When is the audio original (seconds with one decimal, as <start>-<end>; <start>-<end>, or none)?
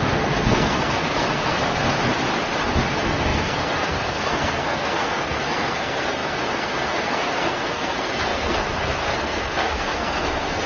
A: 1.8-2.9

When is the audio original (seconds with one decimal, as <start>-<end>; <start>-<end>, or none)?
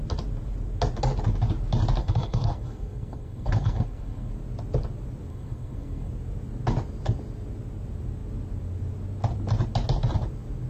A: 0.0-2.0; 4.3-5.3; 6.1-10.7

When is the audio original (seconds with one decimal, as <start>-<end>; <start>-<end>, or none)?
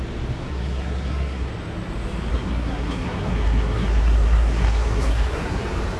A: 0.0-0.4; 1.5-2.3; 5.6-6.0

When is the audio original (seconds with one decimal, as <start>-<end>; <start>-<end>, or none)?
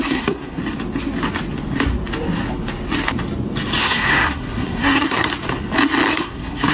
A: 0.6-3.8; 5.3-6.1